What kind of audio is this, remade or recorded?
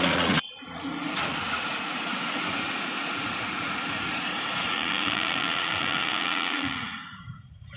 remade